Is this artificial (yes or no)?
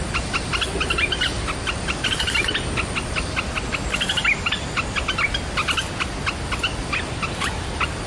no